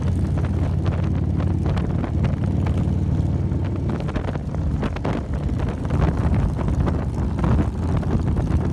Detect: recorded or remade recorded